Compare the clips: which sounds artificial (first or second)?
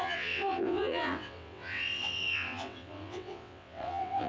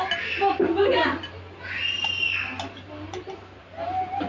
first